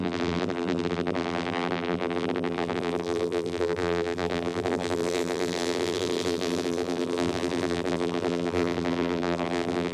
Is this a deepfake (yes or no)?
yes